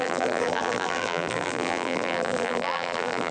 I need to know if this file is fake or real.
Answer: fake